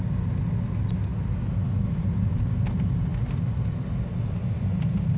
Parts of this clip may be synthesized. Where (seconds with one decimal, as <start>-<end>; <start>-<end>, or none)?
none